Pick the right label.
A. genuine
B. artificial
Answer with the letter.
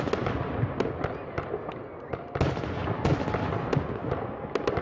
A